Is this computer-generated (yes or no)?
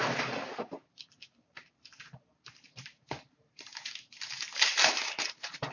yes